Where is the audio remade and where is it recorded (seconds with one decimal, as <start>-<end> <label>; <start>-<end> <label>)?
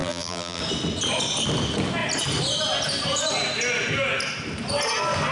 0.0-0.6 remade; 0.6-5.3 recorded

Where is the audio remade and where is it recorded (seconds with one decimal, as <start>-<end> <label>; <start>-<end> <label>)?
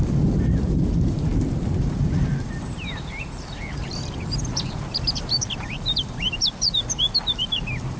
0.0-1.3 remade; 1.3-1.8 recorded; 1.8-8.0 remade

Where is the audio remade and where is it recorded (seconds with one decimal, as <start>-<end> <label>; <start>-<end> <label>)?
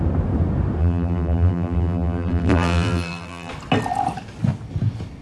0.0-0.8 recorded; 0.8-3.5 remade; 3.5-5.2 recorded